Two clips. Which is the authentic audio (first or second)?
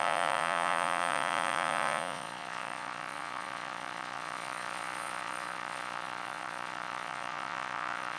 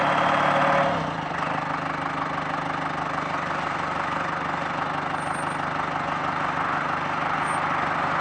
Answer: second